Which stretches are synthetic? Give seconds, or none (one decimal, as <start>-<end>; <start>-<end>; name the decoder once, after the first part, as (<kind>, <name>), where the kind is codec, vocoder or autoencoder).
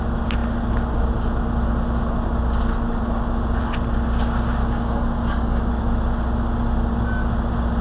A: 4.6-5.7 (codec, DAC)